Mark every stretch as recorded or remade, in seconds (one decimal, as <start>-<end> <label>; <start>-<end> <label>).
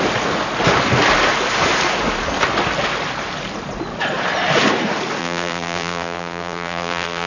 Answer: 0.0-5.2 recorded; 5.2-7.3 remade